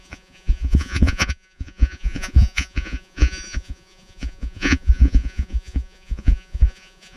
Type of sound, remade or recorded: remade